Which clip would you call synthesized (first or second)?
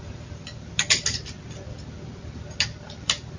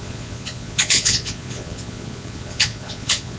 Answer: second